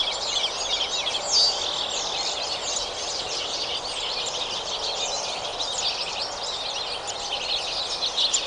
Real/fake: real